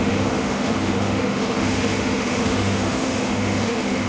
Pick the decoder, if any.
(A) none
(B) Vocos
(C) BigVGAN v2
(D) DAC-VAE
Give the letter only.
D